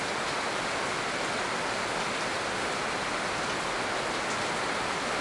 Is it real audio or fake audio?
real